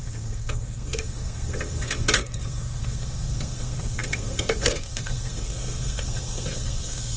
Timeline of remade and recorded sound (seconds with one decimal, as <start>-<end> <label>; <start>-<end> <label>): 0.0-7.2 remade

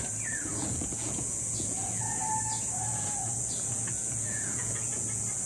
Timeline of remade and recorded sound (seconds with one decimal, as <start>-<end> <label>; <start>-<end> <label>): 0.0-0.4 recorded; 0.4-2.0 remade; 2.0-2.9 recorded; 2.9-5.5 remade

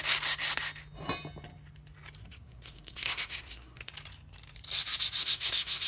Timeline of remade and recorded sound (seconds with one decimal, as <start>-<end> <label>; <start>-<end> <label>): 0.0-2.2 recorded; 2.2-3.9 remade; 3.9-5.2 recorded; 5.2-5.9 remade